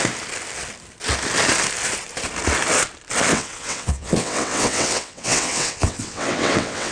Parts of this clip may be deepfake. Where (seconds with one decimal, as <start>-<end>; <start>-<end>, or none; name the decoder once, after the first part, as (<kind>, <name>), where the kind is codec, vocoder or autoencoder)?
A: 3.3-6.9 (vocoder, WaveNeXt)